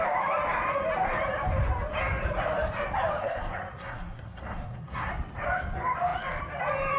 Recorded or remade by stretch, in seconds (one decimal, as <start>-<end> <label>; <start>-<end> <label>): 0.0-3.2 recorded; 3.2-5.1 remade; 5.1-7.0 recorded